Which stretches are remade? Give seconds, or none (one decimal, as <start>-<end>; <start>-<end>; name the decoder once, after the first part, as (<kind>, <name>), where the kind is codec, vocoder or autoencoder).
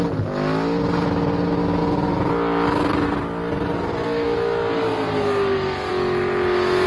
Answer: none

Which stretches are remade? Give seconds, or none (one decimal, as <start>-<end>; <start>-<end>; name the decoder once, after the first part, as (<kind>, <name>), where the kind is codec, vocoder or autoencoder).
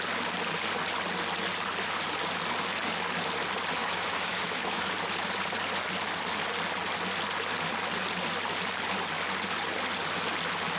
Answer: 3.8-4.9 (autoencoder, DAC-VAE)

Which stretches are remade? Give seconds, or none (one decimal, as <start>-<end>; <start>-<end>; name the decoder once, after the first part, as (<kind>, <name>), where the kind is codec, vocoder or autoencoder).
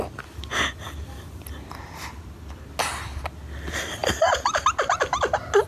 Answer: none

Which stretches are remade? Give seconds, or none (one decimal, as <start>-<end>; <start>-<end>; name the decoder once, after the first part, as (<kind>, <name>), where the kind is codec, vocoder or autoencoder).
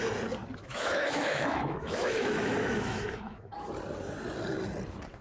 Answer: 0.6-3.7 (autoencoder, DAC-VAE)